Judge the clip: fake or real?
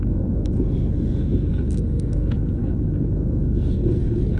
fake